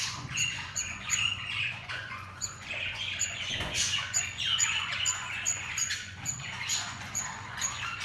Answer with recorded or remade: remade